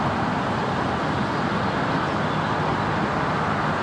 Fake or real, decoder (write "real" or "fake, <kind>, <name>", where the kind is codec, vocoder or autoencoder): real